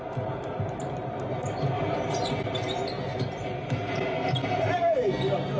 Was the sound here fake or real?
real